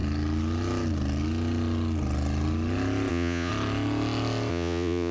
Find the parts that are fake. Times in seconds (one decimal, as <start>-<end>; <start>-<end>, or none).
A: 3.1-3.5; 4.5-5.1